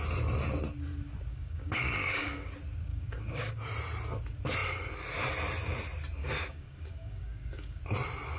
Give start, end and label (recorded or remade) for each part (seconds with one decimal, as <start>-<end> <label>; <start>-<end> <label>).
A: 0.0-1.3 recorded; 1.3-2.5 remade; 2.5-2.9 recorded; 2.9-3.5 remade; 3.5-6.2 recorded; 6.2-7.8 remade; 7.8-8.4 recorded